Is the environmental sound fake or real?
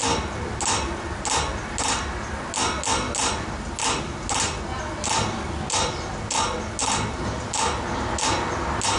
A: real